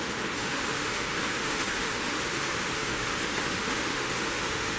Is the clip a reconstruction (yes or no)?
yes